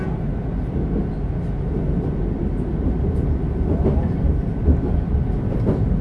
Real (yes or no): yes